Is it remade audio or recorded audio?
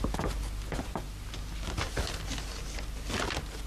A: recorded